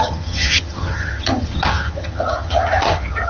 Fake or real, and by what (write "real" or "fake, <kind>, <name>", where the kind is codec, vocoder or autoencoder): fake, vocoder, HiFi-GAN